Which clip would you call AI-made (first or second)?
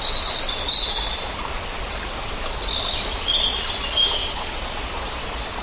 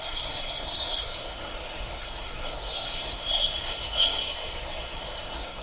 second